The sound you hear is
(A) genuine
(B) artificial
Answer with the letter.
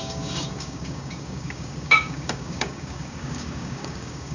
B